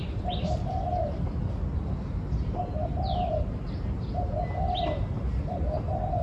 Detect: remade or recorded recorded